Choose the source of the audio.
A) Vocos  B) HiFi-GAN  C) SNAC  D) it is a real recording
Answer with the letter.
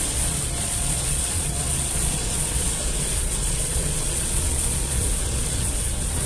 A